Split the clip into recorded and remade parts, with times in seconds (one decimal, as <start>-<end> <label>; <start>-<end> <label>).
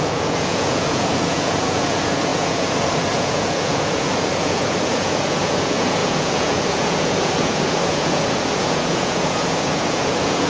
0.0-10.5 remade